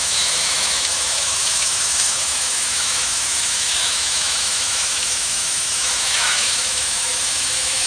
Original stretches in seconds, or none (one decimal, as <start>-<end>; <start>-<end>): none